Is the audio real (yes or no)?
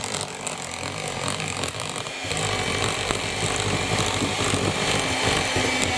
yes